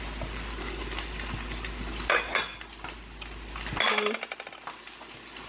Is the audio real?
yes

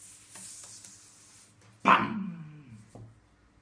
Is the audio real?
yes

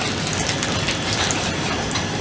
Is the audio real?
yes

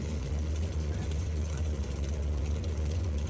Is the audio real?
no